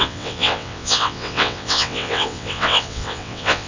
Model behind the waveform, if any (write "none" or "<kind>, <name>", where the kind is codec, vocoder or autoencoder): vocoder, WaveNeXt